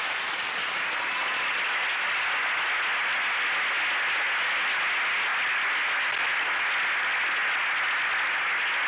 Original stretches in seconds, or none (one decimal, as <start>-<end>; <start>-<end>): 0.0-8.9